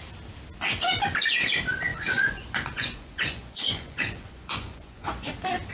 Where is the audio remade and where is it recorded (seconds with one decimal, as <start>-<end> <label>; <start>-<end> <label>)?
0.0-1.9 recorded; 1.9-5.3 remade; 5.3-5.7 recorded